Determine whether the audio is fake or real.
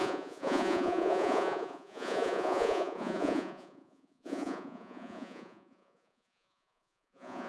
fake